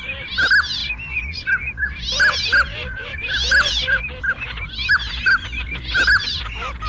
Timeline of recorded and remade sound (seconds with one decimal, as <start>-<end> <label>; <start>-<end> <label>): 0.0-6.9 recorded